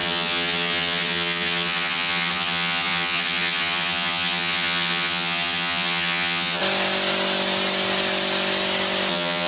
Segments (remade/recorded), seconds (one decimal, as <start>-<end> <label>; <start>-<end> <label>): 0.0-6.6 remade; 6.6-9.1 recorded; 9.1-9.5 remade